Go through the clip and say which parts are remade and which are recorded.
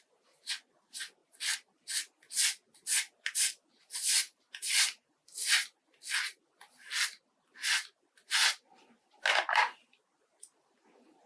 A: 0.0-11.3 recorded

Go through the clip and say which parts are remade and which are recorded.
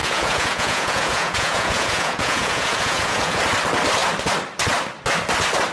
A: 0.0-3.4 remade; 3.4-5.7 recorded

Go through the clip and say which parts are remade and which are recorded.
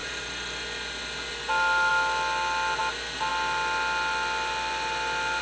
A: 0.0-5.4 recorded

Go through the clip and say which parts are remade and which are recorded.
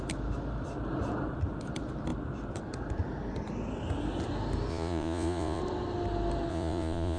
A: 0.0-4.7 recorded; 4.7-5.6 remade; 5.6-6.5 recorded; 6.5-7.2 remade